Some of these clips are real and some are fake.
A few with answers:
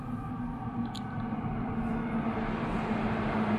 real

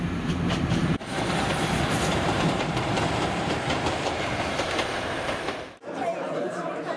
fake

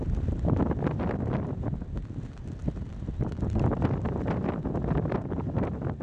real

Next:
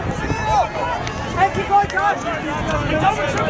real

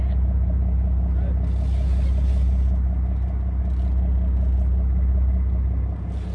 real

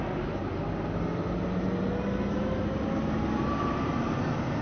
real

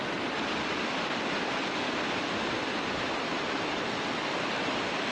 real